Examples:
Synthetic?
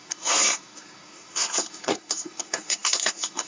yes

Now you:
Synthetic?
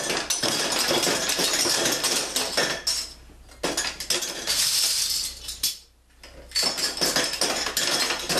no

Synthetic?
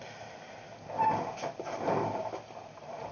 no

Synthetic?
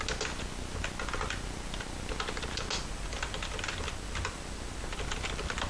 no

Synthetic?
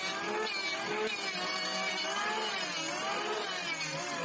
no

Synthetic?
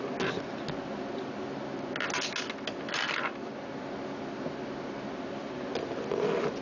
no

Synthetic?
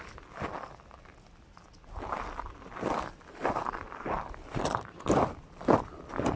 no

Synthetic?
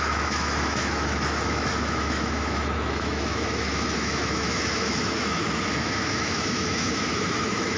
yes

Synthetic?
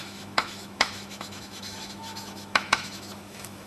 yes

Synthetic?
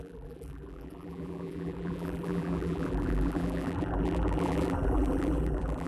yes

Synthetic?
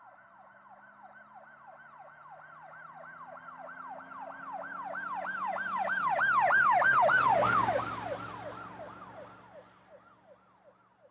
no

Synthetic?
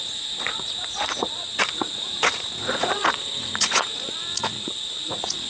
yes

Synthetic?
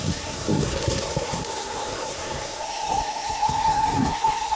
yes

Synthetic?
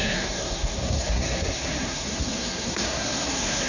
yes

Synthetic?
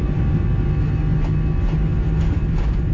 no